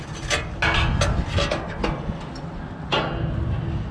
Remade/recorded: recorded